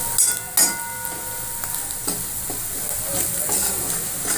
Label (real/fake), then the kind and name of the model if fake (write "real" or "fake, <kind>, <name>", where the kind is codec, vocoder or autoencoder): real